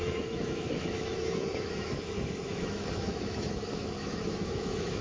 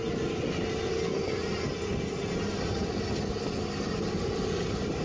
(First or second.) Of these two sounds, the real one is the second